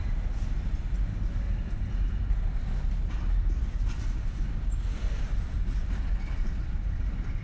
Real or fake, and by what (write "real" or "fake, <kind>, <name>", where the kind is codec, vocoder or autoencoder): real